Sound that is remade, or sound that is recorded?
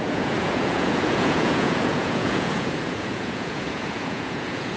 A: remade